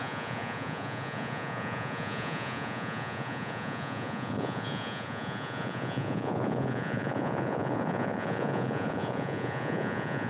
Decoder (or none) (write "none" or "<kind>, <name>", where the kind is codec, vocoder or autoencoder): vocoder, Vocos